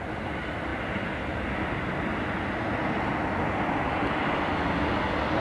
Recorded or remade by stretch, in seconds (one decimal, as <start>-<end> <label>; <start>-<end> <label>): 0.0-5.4 recorded